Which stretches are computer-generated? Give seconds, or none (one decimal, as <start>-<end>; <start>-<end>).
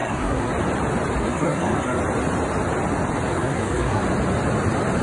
0.0-0.5; 1.2-2.0; 3.3-4.0